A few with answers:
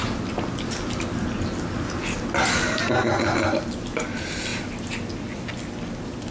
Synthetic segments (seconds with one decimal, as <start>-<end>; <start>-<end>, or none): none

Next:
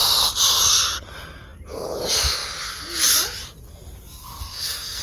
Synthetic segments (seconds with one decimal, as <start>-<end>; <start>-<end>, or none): 4.2-5.0

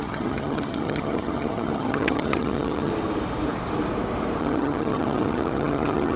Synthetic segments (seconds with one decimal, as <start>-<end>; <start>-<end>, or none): 0.0-2.9; 4.4-6.2